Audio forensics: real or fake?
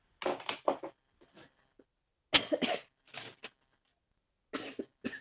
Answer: real